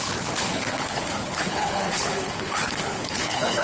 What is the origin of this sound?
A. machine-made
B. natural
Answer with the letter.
A